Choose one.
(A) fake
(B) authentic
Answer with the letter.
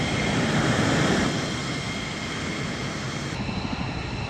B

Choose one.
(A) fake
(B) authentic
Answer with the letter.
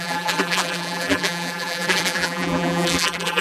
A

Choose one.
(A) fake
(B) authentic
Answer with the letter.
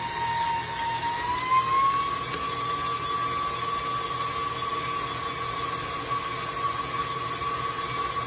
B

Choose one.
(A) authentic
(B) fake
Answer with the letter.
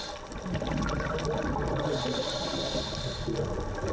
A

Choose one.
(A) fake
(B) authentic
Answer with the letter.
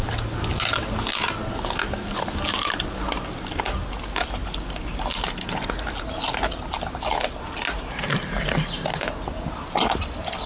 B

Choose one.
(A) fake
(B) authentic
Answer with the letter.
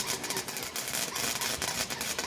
B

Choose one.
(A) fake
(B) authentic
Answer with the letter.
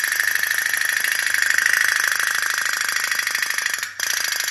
B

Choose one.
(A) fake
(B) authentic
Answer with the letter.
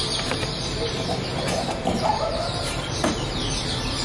A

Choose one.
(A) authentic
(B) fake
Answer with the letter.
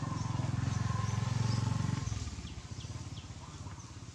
A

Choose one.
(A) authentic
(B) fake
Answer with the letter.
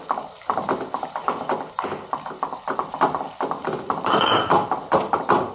B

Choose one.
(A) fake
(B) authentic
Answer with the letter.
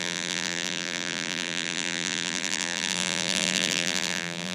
A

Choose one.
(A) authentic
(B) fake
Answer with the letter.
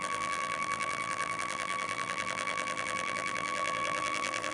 B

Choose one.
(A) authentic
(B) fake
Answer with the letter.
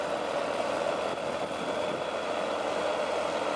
A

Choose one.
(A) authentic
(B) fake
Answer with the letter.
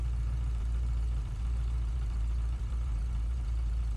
B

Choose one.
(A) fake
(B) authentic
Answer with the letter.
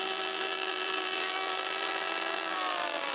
A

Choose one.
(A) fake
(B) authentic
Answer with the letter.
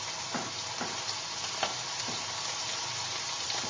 A